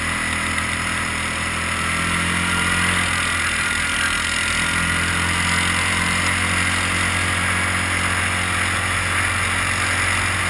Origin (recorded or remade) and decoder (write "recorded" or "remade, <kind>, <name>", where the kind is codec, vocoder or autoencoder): recorded